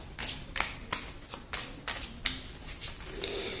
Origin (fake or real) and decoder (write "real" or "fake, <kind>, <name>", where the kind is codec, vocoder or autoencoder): real